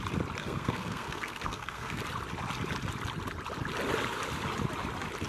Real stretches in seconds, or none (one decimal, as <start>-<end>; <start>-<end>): 0.0-0.4; 2.0-5.3